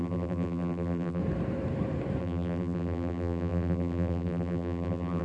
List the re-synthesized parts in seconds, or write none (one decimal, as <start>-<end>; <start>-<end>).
0.0-1.2; 2.2-5.2